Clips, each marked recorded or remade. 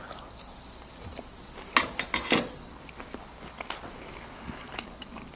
recorded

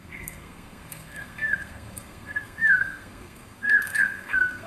remade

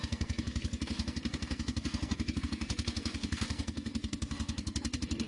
remade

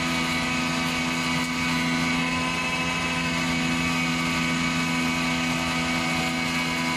recorded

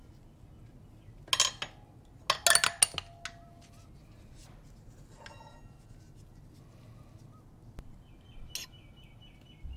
recorded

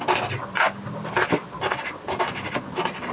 recorded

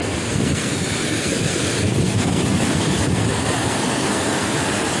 remade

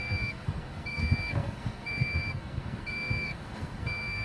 remade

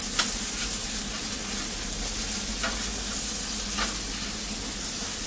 recorded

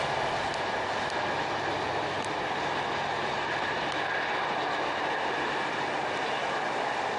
recorded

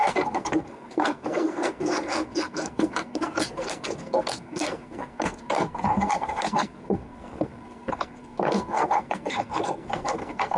remade